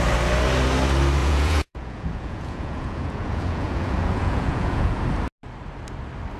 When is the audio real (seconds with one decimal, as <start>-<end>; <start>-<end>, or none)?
0.0-1.2; 5.0-6.4